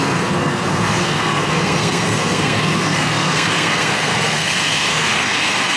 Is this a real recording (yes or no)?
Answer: no